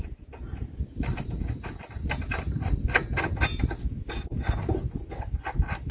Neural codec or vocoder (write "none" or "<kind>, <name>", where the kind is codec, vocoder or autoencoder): none